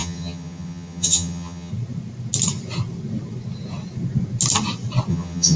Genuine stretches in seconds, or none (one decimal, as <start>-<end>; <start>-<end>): 1.7-5.1

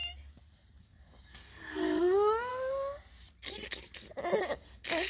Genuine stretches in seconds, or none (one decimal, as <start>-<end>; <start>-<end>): 0.0-0.8; 2.5-4.4

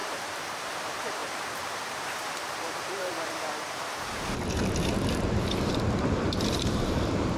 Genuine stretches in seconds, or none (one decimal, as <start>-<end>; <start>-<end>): none

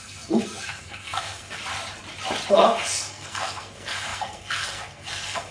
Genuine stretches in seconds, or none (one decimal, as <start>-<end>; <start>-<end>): 1.6-2.5

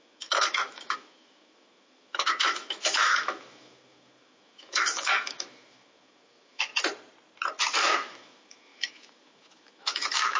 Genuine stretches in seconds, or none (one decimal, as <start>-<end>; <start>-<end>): 6.7-7.8

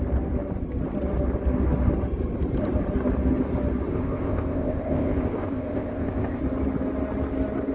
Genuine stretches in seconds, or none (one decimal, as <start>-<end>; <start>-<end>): 0.0-3.9; 6.4-7.7

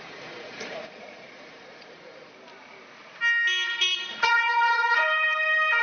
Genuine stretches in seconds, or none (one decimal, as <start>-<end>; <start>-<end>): 2.3-4.1; 5.0-5.8